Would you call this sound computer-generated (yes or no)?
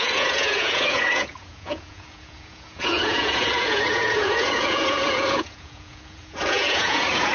yes